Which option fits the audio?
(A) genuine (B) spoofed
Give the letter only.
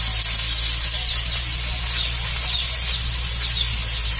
A